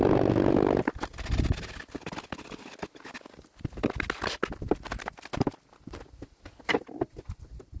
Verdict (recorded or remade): recorded